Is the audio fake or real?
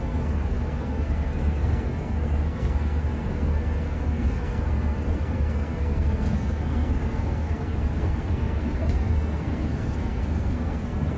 fake